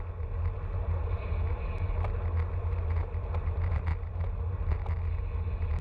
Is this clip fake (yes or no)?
no